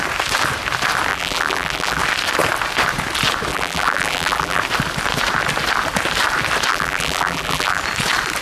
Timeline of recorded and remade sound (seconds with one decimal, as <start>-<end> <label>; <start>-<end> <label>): 0.0-1.1 recorded; 1.1-2.0 remade; 2.0-3.5 recorded; 3.5-4.6 remade; 4.6-6.7 recorded; 6.7-7.8 remade; 7.8-8.4 recorded